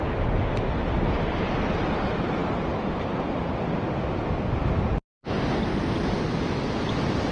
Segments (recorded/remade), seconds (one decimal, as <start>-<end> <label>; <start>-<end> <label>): 0.0-7.3 recorded